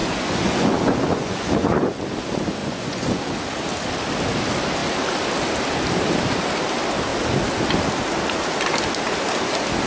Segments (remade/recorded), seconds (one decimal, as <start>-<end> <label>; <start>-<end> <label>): 0.0-2.0 remade; 2.0-2.6 recorded; 2.6-3.2 remade; 3.2-9.9 recorded

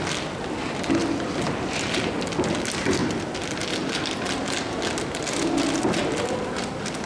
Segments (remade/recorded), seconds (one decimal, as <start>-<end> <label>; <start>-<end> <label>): 0.0-7.1 recorded

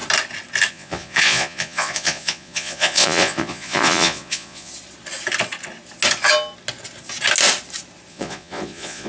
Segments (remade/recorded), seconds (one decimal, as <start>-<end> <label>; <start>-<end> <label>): 0.0-0.7 recorded; 0.7-4.7 remade; 4.7-8.1 recorded; 8.1-9.1 remade

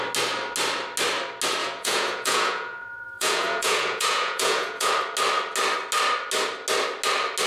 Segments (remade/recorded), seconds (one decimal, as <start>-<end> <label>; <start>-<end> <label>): 0.0-1.6 recorded; 1.6-4.9 remade; 4.9-7.5 recorded

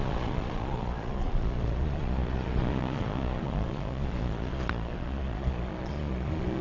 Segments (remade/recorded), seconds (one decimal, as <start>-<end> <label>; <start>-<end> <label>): 0.0-6.6 remade